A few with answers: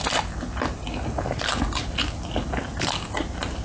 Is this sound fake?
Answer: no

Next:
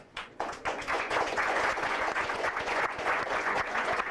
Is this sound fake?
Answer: yes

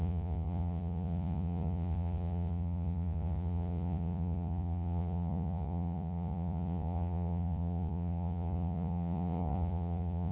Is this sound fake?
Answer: yes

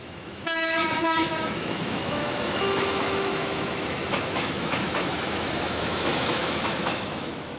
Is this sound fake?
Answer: yes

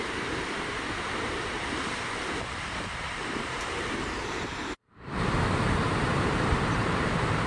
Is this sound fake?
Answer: yes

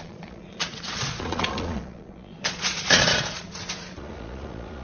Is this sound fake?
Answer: yes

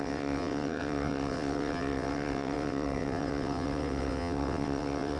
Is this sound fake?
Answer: yes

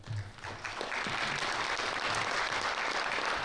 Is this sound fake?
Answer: no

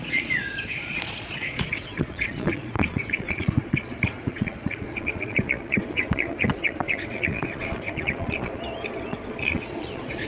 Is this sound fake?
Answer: yes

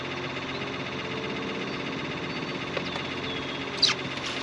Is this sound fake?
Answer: no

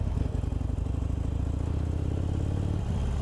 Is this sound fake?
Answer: no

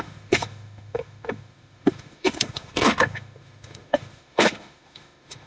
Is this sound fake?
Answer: yes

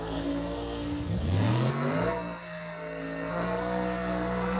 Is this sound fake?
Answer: yes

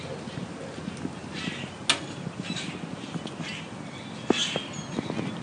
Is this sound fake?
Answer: no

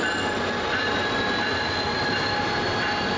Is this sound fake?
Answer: no